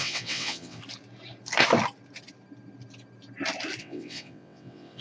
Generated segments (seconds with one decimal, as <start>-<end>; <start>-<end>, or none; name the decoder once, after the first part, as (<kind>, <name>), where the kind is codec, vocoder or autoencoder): 0.0-0.8 (vocoder, WaveNeXt); 3.8-5.0